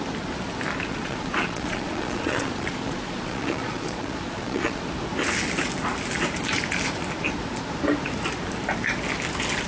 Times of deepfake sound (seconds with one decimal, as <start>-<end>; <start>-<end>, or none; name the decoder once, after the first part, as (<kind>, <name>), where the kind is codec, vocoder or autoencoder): 0.9-4.8 (vocoder, Vocos)